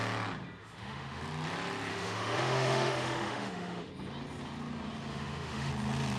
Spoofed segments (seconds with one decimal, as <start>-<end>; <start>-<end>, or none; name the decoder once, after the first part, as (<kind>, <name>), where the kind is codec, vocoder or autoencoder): 0.6-1.2 (autoencoder, DAC-VAE); 1.9-3.9; 5.1-5.7